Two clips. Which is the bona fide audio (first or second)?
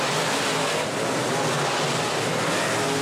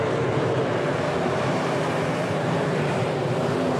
first